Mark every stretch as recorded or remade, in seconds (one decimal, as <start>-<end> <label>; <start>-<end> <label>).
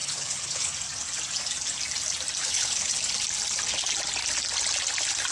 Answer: 0.0-0.7 remade; 0.7-2.4 recorded; 2.4-3.0 remade; 3.0-5.3 recorded